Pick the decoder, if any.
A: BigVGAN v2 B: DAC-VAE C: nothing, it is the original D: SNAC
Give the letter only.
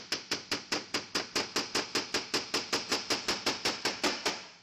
C